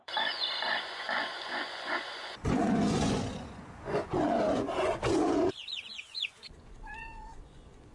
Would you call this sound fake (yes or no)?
yes